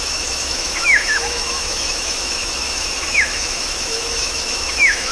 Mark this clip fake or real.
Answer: fake